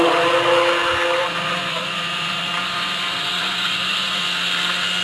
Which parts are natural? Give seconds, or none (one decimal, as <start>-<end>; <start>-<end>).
0.0-1.2; 4.2-5.0